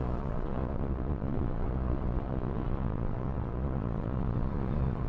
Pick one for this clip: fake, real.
fake